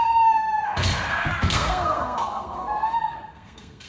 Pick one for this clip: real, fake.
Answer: fake